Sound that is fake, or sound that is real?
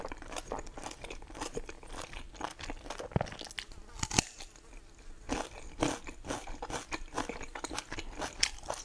real